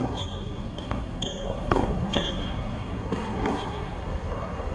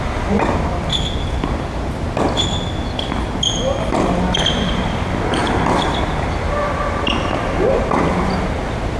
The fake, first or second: first